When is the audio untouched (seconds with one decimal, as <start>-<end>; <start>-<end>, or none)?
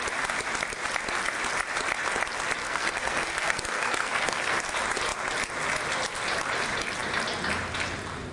0.0-2.6; 4.6-8.3